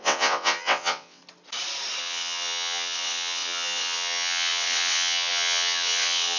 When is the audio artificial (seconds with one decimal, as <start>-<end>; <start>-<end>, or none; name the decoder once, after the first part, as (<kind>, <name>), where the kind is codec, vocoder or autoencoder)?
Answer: 0.0-1.2 (vocoder, WaveNeXt); 2.0-6.4